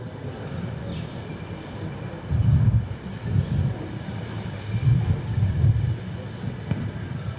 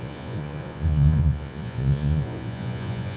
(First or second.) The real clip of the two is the first